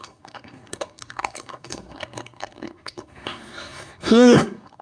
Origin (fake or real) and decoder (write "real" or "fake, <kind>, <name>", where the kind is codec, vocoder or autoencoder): fake, codec, SNAC